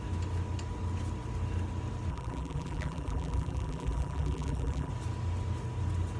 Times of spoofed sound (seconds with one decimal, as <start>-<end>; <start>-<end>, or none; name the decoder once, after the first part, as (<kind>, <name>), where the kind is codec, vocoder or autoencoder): 2.1-4.9 (vocoder, BigVGAN v2)